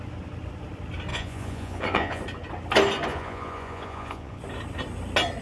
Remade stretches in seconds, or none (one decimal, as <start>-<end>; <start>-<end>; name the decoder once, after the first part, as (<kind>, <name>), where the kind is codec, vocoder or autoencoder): 1.1-2.2 (vocoder, Vocos); 3.1-4.4